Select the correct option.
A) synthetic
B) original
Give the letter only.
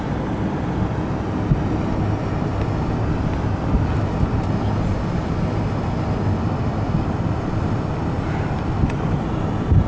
B